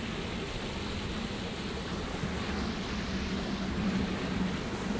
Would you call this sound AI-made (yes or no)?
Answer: no